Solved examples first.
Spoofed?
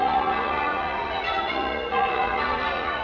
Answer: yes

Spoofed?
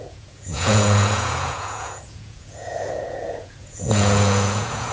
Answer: yes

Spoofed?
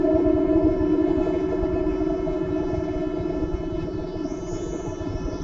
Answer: yes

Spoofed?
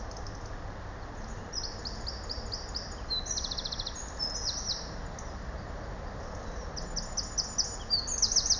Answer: no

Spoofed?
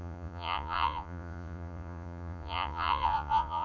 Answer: yes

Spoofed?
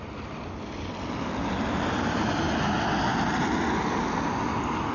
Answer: no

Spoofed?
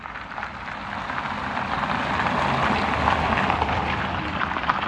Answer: no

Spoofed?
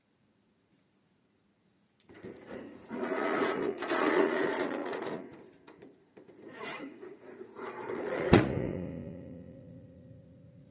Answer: yes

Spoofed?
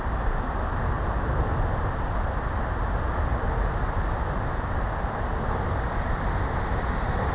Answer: no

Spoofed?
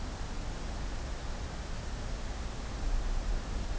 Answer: no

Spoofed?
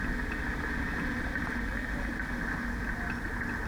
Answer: no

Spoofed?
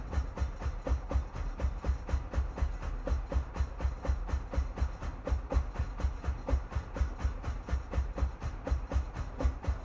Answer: no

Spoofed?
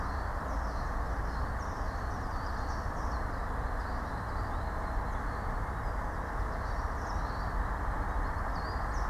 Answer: no